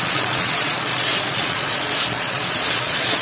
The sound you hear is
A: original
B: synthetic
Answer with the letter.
B